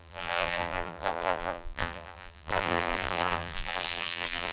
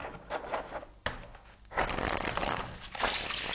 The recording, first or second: second